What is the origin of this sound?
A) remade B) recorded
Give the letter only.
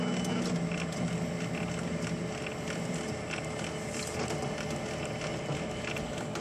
B